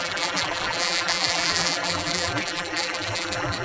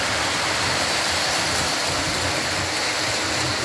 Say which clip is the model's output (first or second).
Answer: first